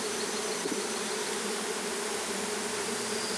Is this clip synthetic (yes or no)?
no